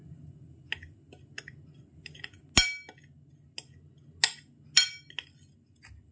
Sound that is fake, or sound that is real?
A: real